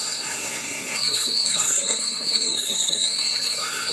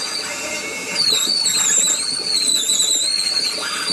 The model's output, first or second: first